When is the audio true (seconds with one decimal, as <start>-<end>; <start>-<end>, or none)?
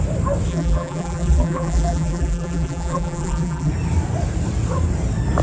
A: 0.0-0.5; 3.7-5.4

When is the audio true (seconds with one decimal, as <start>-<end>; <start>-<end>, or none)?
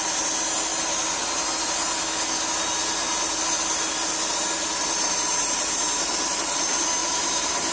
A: 0.0-7.0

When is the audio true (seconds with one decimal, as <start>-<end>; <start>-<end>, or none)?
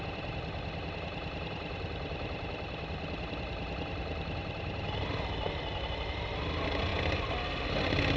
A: 0.0-8.2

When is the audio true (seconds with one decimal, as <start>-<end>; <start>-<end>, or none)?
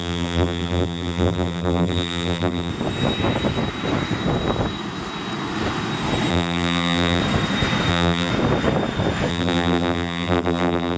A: 2.7-6.3; 7.2-7.9; 8.3-9.3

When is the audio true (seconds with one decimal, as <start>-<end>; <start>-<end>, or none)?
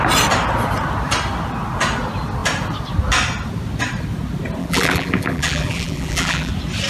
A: 0.0-4.6; 6.5-6.9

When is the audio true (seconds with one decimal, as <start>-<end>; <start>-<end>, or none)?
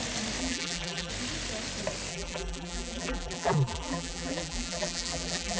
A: 0.0-0.4; 1.1-2.1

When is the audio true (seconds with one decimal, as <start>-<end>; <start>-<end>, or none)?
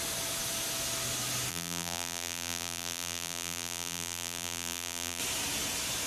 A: 0.0-1.5; 5.2-6.1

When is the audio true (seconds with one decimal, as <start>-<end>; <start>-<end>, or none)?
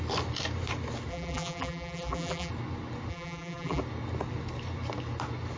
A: 0.0-1.1; 2.5-3.1; 3.8-5.6